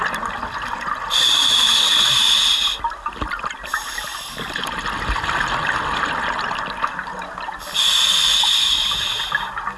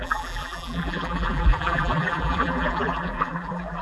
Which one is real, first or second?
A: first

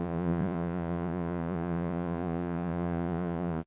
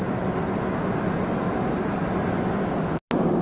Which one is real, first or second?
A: second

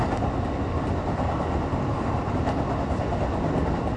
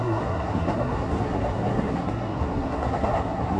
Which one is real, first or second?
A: first